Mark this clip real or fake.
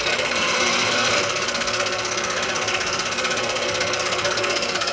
fake